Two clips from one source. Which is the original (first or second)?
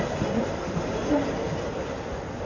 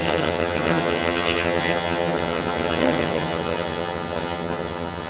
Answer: first